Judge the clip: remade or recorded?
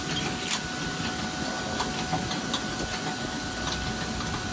recorded